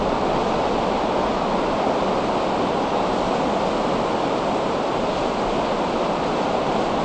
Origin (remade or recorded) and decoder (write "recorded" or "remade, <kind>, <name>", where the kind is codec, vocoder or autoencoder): recorded